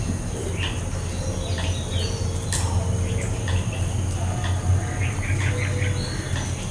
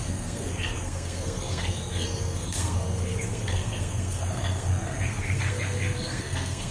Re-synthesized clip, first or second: second